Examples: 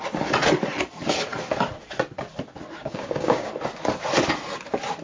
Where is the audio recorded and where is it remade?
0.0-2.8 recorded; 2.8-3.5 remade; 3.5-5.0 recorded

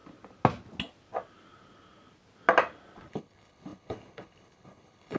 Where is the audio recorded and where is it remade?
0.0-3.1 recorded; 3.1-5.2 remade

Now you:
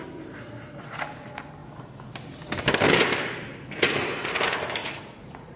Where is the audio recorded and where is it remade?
0.0-4.8 recorded; 4.8-5.6 remade

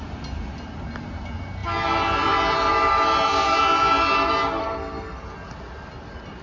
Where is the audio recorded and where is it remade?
0.0-4.6 recorded; 4.6-5.2 remade; 5.2-6.4 recorded

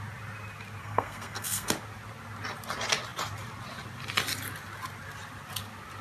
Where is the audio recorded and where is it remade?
0.0-0.8 recorded; 0.8-1.7 remade; 1.7-6.0 recorded

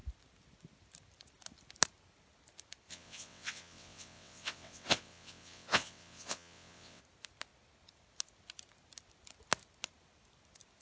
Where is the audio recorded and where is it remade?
0.0-2.9 recorded; 2.9-7.0 remade; 7.0-10.8 recorded

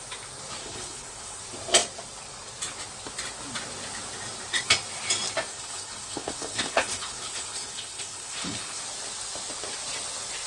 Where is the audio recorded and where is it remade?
0.0-0.6 recorded; 0.6-1.4 remade; 1.4-5.5 recorded; 5.5-8.8 remade; 8.8-10.5 recorded

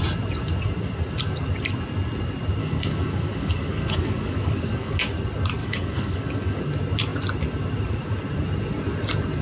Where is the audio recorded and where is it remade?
0.0-2.6 recorded; 2.6-5.0 remade; 5.0-5.6 recorded; 5.6-6.6 remade; 6.6-9.4 recorded